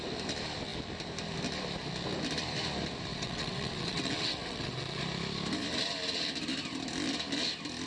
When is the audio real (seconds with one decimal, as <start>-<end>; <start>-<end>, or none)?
0.0-3.1; 5.0-7.9